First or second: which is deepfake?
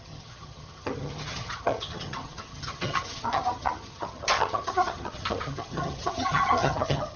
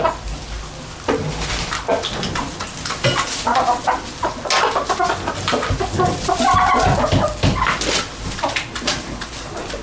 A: first